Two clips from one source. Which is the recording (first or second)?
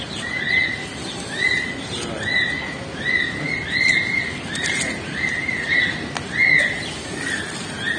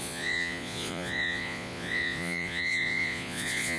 first